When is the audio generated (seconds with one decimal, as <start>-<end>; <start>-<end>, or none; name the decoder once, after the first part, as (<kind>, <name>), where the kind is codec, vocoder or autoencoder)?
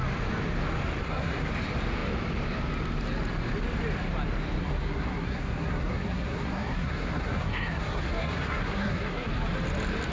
1.0-1.5 (codec, SNAC); 4.6-9.3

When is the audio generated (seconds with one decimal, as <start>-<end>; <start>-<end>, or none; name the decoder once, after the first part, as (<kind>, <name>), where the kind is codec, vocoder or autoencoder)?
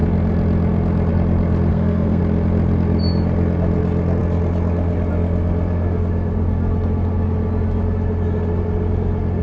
1.7-2.2 (codec, SNAC)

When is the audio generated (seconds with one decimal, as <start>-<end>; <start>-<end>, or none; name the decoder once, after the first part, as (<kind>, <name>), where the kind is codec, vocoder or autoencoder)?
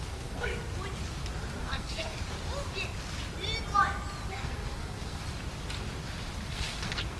0.0-0.5 (codec, SNAC); 1.6-2.2; 4.3-5.2; 6.5-7.2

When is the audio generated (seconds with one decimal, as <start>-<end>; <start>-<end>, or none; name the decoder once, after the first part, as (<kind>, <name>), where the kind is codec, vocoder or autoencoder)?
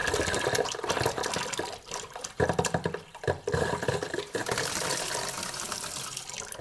none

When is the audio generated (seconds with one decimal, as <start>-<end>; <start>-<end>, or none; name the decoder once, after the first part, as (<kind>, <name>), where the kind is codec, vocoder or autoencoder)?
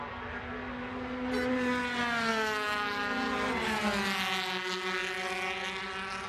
none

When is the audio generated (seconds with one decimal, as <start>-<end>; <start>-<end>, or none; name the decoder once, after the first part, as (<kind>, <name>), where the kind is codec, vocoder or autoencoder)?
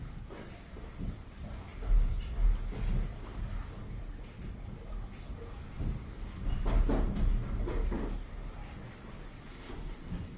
9.5-10.4 (codec, SNAC)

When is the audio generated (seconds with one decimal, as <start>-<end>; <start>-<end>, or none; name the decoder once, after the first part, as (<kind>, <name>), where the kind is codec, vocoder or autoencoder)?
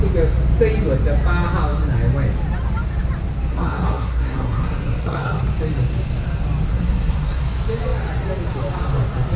3.5-5.4 (codec, SNAC); 6.7-7.4